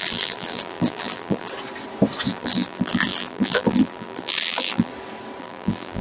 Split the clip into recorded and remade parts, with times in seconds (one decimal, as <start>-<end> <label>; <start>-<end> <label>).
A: 0.0-1.5 remade; 1.5-2.3 recorded; 2.3-4.9 remade; 4.9-5.4 recorded; 5.4-6.0 remade